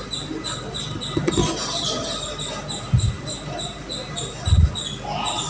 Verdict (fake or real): real